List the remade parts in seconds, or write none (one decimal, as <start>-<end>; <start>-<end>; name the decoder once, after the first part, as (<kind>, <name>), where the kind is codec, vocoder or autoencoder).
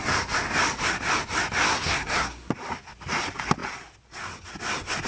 1.7-2.5 (codec, SNAC)